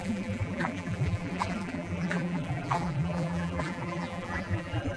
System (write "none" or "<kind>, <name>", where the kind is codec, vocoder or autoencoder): vocoder, BigVGAN v2